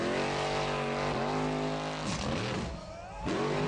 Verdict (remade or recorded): recorded